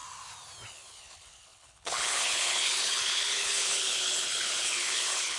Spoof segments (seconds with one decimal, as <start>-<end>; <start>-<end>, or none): 0.7-5.4